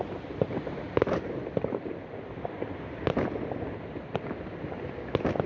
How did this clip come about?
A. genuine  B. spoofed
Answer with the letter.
A